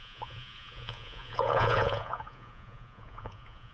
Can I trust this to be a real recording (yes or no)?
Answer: no